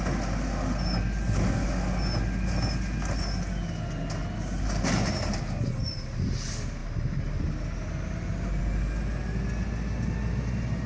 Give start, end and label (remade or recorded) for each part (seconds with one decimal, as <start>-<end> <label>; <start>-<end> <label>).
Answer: 0.0-10.9 recorded